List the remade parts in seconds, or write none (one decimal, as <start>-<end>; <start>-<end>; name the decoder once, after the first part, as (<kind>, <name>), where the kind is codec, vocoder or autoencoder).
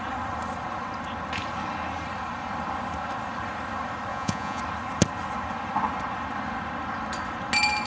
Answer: 4.1-4.6 (vocoder, Vocos)